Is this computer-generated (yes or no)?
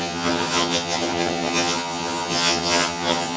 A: yes